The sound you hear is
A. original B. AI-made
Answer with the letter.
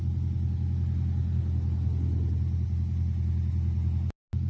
A